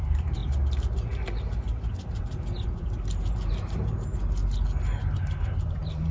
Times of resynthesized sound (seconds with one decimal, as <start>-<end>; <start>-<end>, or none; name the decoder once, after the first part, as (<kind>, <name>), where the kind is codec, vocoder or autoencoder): 0.0-0.4 (vocoder, BigVGAN v2); 1.4-4.4; 5.4-6.1